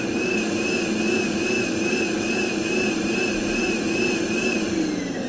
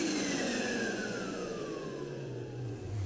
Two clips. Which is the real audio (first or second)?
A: first